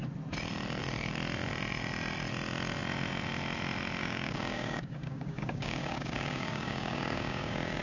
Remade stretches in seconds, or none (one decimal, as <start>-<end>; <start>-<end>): 4.0-7.8